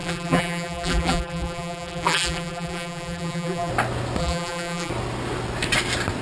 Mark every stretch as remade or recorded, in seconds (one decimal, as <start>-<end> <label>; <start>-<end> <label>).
0.0-3.7 remade; 3.7-4.2 recorded; 4.2-4.9 remade; 4.9-6.2 recorded